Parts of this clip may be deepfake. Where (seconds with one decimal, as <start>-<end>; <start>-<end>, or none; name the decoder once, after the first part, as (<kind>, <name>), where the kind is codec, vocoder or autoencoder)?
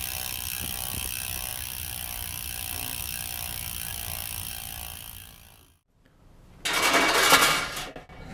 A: none